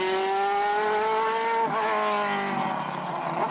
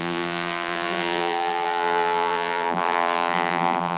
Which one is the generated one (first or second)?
second